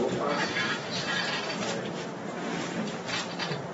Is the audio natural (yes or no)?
yes